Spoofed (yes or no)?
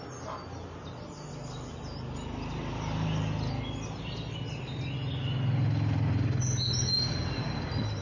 no